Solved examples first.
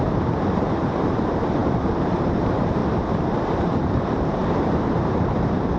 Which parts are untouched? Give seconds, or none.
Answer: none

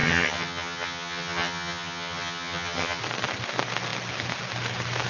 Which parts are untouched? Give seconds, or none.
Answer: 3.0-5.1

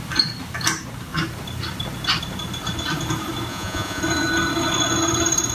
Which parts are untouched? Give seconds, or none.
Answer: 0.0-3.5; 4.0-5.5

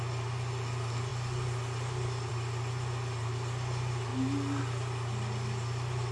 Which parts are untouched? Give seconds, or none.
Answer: 0.0-6.1

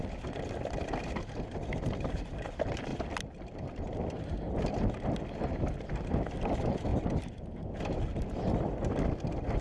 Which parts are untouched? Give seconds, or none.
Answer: 0.0-9.6

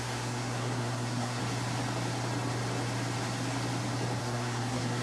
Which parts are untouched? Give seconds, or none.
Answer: 1.4-4.2

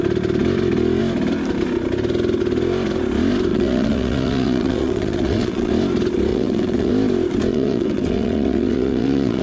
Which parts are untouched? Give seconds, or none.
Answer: 0.0-3.5; 5.7-6.3; 6.9-7.5

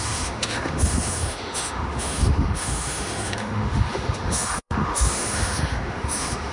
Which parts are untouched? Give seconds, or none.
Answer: none